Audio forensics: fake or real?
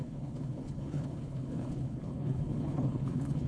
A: fake